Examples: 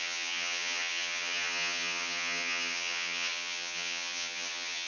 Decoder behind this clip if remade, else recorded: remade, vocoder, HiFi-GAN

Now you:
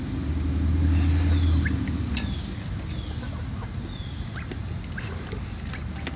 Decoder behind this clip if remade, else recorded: recorded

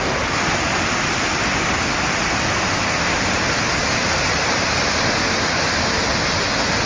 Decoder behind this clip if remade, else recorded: recorded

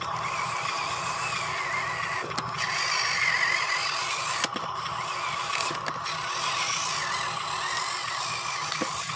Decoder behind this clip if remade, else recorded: recorded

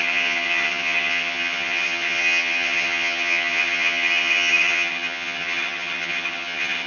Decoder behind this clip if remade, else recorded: remade, vocoder, HiFi-GAN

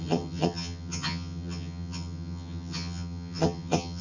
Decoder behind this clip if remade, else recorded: remade, vocoder, HiFi-GAN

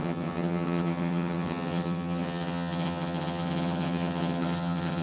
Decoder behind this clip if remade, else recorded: remade, vocoder, HiFi-GAN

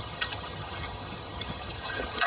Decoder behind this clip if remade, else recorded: remade, vocoder, HiFi-GAN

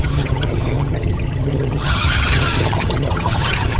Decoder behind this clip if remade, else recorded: remade, vocoder, HiFi-GAN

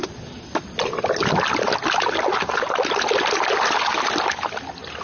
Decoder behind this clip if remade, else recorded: recorded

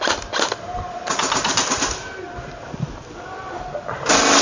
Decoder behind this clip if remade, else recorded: recorded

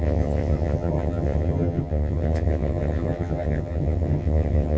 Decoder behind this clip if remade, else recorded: remade, vocoder, HiFi-GAN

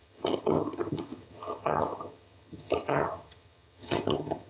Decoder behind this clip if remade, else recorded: remade, vocoder, HiFi-GAN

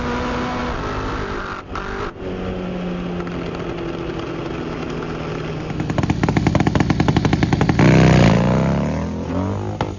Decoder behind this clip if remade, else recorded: recorded